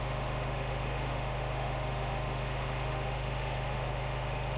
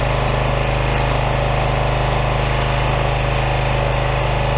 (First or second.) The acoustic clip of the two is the second